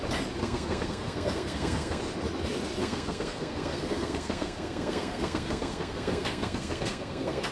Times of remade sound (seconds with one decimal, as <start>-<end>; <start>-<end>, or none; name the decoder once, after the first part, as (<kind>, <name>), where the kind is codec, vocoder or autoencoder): 0.4-2.0 (codec, SNAC); 2.8-7.5